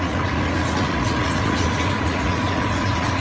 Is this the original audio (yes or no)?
no